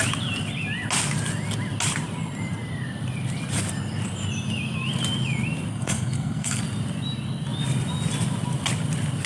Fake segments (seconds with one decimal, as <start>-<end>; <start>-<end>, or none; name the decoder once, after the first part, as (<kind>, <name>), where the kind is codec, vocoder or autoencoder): 5.7-6.6 (codec, SNAC)